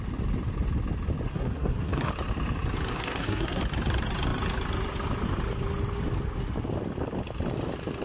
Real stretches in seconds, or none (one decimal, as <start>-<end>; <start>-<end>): 0.0-1.3; 2.1-2.9; 3.6-8.0